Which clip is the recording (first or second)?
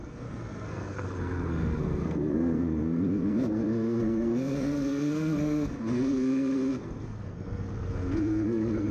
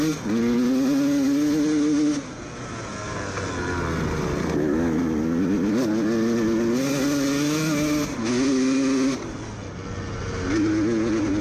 second